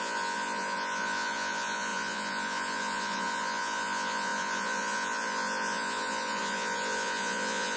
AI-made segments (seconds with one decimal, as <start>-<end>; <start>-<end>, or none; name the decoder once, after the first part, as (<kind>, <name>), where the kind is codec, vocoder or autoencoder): 0.0-7.8 (vocoder, Vocos)